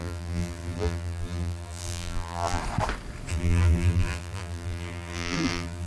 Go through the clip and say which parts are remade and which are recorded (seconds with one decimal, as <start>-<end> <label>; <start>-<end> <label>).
0.0-2.6 remade; 2.6-3.3 recorded; 3.3-5.9 remade